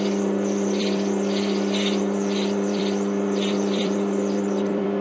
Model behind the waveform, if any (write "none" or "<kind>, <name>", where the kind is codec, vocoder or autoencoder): vocoder, BigVGAN v2